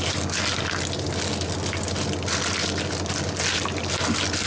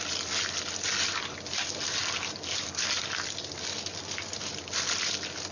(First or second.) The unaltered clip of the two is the first